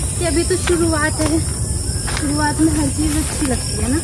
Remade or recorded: recorded